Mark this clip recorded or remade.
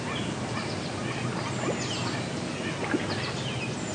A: recorded